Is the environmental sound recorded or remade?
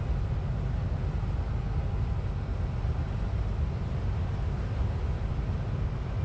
recorded